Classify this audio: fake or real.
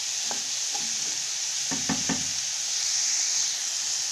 real